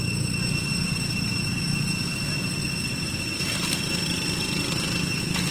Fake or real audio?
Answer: real